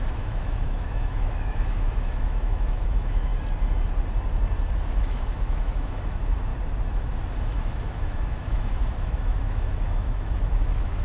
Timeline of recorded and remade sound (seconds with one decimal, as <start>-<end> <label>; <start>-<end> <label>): 0.0-3.3 remade; 3.3-5.0 recorded; 5.0-6.5 remade; 6.5-7.3 recorded; 7.3-11.0 remade